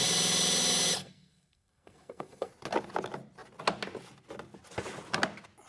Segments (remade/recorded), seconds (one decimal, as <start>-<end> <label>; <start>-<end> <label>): 0.0-1.0 recorded; 1.0-2.5 remade; 2.5-5.7 recorded